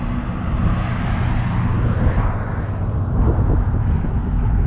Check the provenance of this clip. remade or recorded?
recorded